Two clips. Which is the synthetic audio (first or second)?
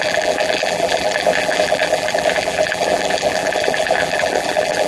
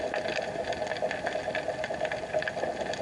first